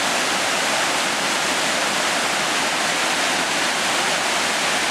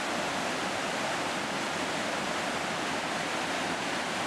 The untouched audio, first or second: first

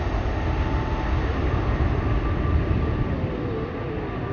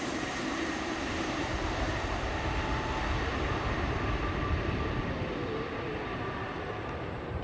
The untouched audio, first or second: first